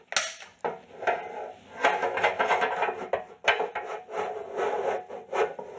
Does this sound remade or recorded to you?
recorded